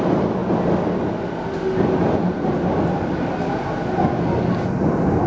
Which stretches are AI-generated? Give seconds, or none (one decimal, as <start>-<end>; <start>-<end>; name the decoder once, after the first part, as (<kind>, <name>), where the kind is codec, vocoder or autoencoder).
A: none